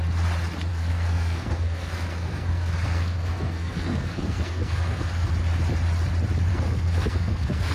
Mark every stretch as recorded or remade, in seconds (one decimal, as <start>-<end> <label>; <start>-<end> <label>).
0.0-0.7 recorded; 0.7-5.3 remade; 5.3-6.5 recorded; 6.5-7.7 remade